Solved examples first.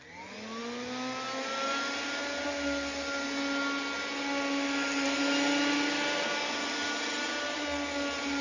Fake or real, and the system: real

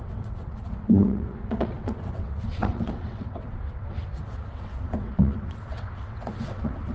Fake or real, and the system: fake, vocoder, WaveNeXt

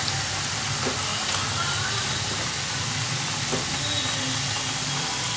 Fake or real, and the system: real